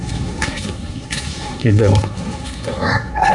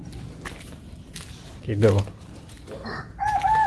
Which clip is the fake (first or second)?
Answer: first